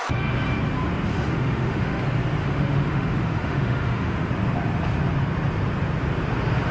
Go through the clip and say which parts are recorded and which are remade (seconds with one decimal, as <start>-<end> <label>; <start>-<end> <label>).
0.0-1.1 recorded; 1.1-2.0 remade; 2.0-2.4 recorded; 2.4-4.3 remade; 4.3-6.7 recorded

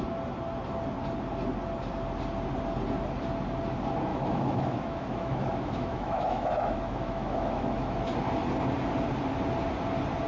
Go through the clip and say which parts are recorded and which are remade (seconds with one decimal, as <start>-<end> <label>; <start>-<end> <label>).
0.0-4.1 recorded; 4.1-8.1 remade; 8.1-10.3 recorded

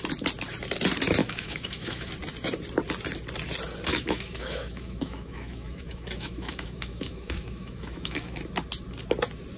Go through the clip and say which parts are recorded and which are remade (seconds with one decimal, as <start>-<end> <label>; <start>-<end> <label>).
0.0-1.2 recorded; 1.2-2.1 remade; 2.1-3.9 recorded; 3.9-8.4 remade; 8.4-9.6 recorded

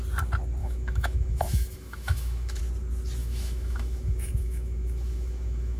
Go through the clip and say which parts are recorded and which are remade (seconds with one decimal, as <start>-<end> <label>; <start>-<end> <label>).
0.0-0.6 recorded; 0.6-2.6 remade; 2.6-3.2 recorded; 3.2-5.8 remade

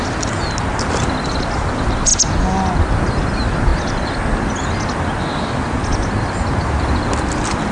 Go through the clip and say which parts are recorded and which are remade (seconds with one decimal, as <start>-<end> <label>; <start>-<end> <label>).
0.0-7.7 recorded

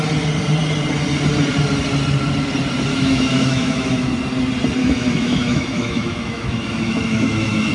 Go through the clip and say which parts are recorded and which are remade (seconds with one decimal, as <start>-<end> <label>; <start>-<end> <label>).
0.0-2.9 recorded; 2.9-4.1 remade; 4.1-4.8 recorded; 4.8-7.7 remade